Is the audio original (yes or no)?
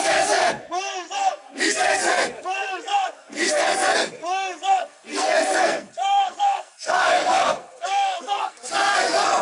no